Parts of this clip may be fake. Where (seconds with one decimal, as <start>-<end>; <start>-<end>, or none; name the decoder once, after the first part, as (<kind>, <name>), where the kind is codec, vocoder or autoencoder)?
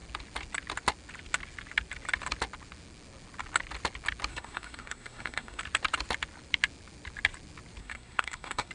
4.3-5.6 (codec, SNAC); 7.8-8.7